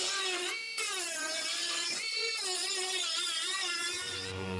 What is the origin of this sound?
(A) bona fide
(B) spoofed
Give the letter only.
B